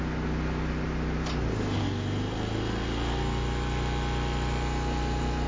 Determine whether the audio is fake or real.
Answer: real